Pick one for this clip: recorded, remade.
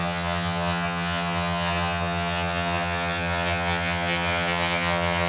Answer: remade